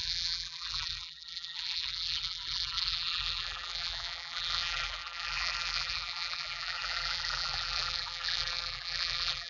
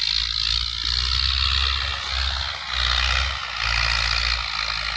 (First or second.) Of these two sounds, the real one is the second